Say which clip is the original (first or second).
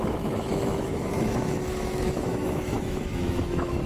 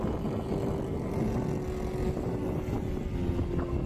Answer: second